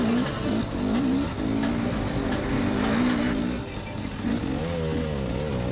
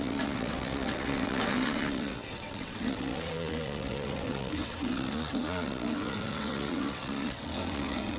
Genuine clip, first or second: first